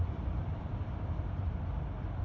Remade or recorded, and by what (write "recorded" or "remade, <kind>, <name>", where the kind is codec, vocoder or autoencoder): remade, vocoder, BigVGAN v2